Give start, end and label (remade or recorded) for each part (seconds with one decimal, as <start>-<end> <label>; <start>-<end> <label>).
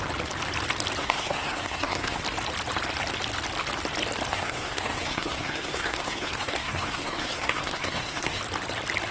0.0-1.0 recorded; 1.0-2.2 remade; 2.2-4.3 recorded; 4.3-8.4 remade; 8.4-9.1 recorded